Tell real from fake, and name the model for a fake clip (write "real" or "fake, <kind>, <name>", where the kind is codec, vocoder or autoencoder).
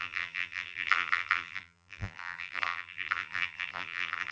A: fake, vocoder, BigVGAN v2